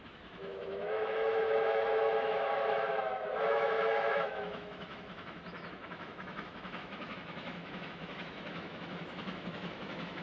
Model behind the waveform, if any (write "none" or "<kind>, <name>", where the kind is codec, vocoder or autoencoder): autoencoder, DAC-VAE